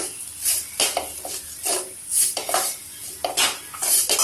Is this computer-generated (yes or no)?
no